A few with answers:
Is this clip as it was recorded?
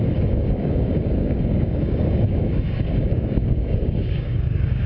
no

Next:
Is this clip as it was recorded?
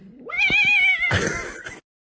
yes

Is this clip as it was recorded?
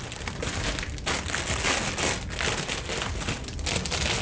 yes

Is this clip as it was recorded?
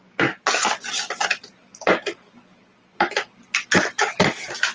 yes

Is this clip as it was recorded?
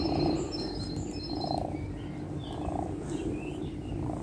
yes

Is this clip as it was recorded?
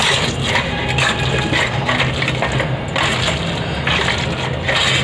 yes